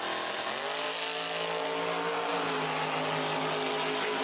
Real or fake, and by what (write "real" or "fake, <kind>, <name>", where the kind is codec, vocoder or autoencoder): real